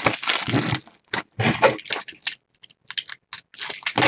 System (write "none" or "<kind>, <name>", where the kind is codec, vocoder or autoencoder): none